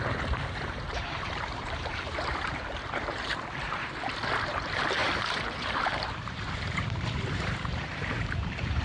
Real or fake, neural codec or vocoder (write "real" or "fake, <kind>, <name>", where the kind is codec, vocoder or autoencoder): fake, vocoder, BigVGAN v2